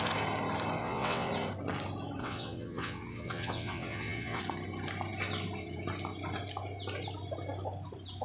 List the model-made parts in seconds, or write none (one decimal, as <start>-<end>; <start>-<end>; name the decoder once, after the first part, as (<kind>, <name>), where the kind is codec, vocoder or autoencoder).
0.8-1.3 (vocoder, WaveNeXt); 2.2-4.4